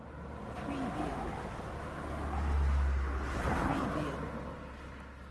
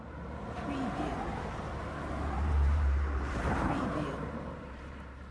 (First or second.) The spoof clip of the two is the second